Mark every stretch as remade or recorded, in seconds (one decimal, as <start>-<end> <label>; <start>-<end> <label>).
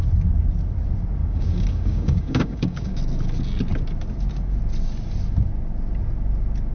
0.0-1.2 recorded; 1.2-3.0 remade; 3.0-6.7 recorded